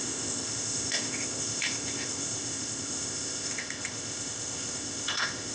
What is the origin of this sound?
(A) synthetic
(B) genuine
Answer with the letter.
A